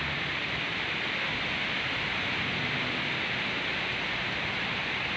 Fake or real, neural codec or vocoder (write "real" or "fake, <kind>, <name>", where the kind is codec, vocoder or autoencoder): real